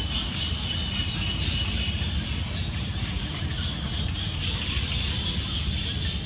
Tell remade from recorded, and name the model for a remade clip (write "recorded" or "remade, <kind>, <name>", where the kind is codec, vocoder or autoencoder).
recorded